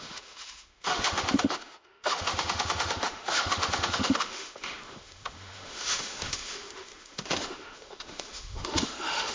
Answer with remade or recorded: remade